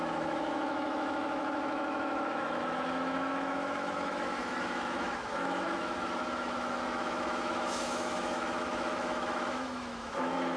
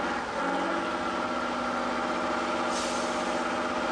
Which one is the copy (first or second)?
first